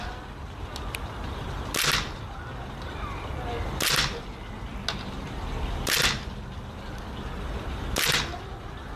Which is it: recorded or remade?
recorded